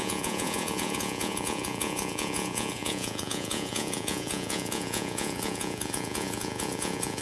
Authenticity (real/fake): fake